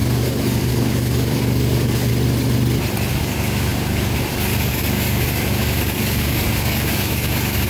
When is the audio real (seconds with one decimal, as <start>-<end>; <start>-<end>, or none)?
2.1-3.1